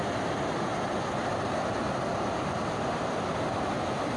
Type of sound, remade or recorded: recorded